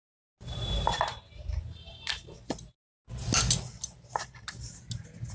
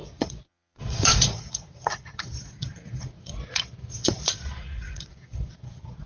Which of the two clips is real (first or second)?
first